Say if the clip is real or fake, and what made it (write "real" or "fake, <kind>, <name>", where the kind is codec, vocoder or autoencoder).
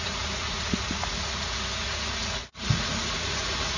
fake, vocoder, Vocos